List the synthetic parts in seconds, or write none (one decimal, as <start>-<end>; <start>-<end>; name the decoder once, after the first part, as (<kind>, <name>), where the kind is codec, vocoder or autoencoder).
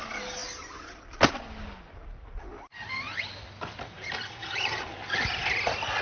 none